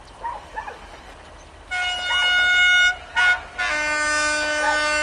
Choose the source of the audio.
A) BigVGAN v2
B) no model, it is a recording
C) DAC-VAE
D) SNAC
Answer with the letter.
B